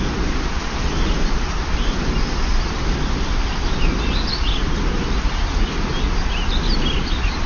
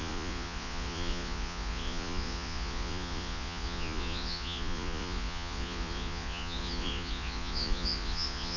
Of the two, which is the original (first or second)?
first